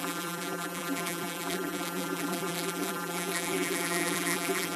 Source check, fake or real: fake